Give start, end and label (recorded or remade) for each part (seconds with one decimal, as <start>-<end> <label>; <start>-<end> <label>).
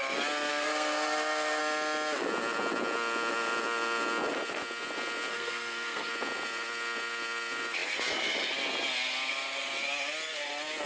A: 0.0-0.5 recorded; 0.5-1.6 remade; 1.6-5.3 recorded; 5.3-6.1 remade; 6.1-10.9 recorded